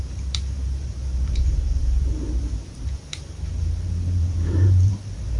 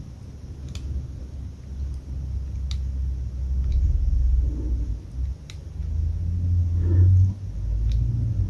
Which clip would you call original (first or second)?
second